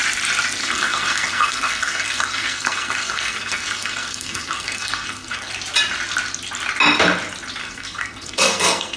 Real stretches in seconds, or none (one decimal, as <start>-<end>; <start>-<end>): 0.0-0.6; 5.5-7.6